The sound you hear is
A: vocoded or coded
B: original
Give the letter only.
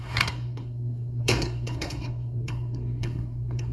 A